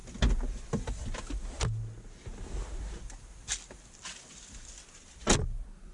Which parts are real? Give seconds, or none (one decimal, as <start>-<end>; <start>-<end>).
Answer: 0.0-5.9